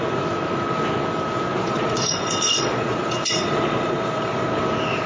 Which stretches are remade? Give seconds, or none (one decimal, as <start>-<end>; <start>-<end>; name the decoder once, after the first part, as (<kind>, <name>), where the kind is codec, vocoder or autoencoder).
1.5-4.6 (vocoder, Vocos)